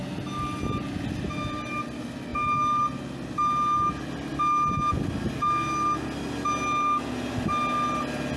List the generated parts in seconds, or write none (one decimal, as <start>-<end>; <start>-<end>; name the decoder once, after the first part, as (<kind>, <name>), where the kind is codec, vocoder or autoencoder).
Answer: none